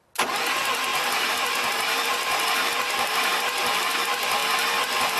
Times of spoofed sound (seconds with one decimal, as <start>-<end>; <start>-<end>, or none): 0.9-4.0